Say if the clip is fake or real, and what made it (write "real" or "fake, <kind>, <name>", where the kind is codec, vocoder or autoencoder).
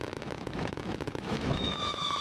fake, autoencoder, DAC-VAE